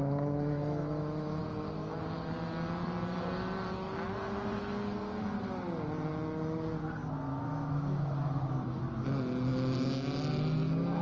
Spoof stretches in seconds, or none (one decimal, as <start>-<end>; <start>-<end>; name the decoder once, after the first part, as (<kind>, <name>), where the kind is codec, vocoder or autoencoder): 0.0-1.4 (autoencoder, DAC-VAE); 7.3-8.8